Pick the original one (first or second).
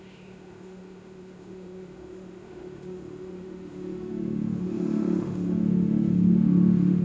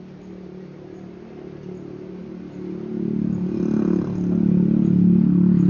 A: second